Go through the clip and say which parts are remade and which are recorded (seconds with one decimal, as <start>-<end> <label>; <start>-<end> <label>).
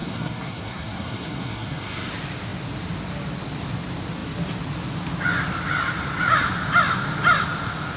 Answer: 0.0-2.1 remade; 2.1-8.0 recorded